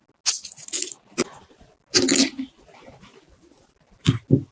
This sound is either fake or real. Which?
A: real